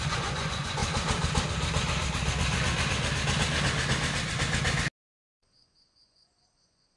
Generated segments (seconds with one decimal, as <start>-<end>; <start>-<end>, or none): 0.0-0.8; 5.0-7.0